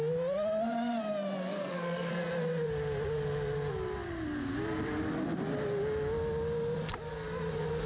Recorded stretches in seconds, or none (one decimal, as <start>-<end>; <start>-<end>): 0.0-1.5; 2.1-7.9